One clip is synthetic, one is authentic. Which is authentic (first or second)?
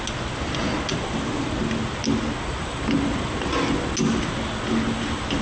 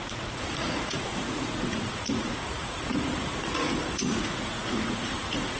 first